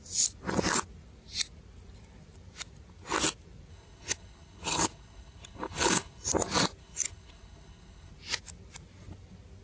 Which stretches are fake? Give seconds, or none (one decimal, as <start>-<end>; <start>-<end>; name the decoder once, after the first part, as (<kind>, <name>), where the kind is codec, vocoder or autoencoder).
3.7-6.3 (codec, HILCodec); 6.8-8.1